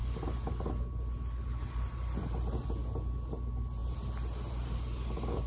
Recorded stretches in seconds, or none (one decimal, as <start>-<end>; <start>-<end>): 0.0-5.5